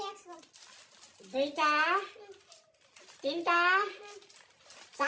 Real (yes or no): yes